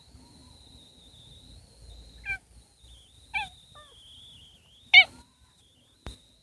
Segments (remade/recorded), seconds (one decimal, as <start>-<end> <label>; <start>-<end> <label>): 0.0-6.4 recorded